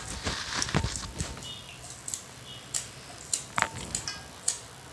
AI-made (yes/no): no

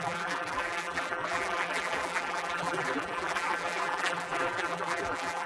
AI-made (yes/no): yes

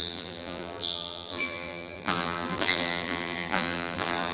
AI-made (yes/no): yes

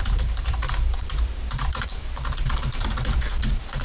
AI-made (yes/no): yes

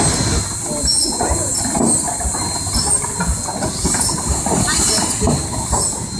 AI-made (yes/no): no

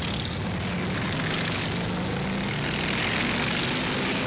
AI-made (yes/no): no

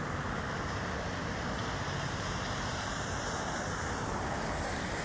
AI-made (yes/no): yes